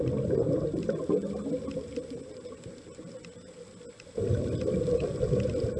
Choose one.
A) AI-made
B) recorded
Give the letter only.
B